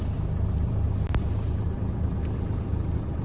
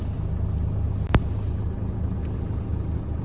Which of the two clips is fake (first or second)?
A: first